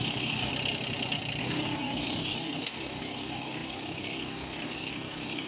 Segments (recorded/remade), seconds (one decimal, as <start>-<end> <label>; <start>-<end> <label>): 0.0-0.5 remade; 0.5-1.4 recorded; 1.4-5.5 remade